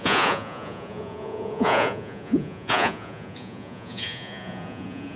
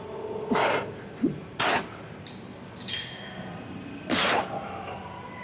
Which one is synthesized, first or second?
first